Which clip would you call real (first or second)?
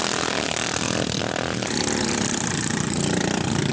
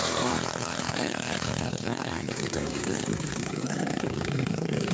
first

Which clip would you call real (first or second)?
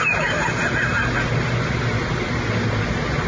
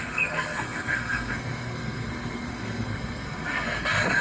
first